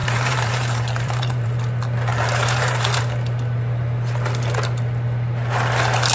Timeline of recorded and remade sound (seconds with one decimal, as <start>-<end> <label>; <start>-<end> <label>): 0.0-1.6 remade; 1.6-2.1 recorded; 2.1-3.0 remade; 3.0-6.1 recorded